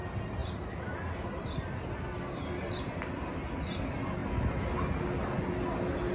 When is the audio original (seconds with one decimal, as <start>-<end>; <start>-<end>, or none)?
0.0-0.4; 3.3-6.1